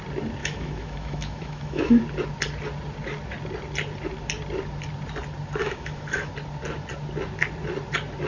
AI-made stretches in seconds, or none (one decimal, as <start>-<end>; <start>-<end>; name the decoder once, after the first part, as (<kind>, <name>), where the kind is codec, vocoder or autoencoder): 0.4-2.0 (autoencoder, DAC-VAE); 5.6-6.3